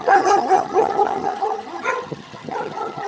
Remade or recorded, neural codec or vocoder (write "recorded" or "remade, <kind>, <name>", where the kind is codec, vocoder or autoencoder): remade, vocoder, HiFi-GAN